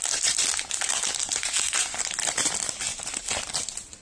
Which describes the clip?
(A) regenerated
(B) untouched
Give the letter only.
B